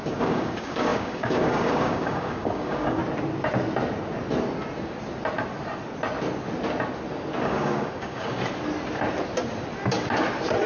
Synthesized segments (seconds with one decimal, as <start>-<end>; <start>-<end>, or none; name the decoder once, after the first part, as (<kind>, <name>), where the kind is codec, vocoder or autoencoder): 0.0-3.0 (codec, DAC); 7.4-8.4